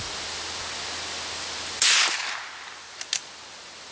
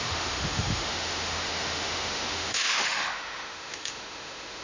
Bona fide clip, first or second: first